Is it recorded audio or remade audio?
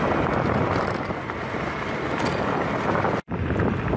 recorded